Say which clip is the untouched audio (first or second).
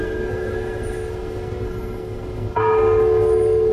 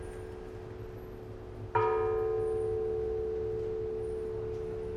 second